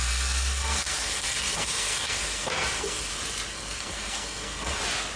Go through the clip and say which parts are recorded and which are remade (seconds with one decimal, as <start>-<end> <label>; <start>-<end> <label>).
0.0-3.1 remade; 3.1-3.5 recorded; 3.5-4.8 remade; 4.8-5.2 recorded